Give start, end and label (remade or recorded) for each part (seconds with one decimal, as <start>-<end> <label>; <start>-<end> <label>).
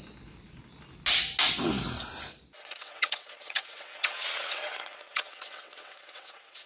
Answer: 0.0-2.6 recorded; 2.6-6.7 remade